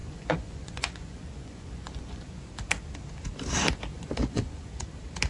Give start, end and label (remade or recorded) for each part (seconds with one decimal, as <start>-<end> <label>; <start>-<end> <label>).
0.0-2.5 remade; 2.5-3.9 recorded; 3.9-4.7 remade; 4.7-5.3 recorded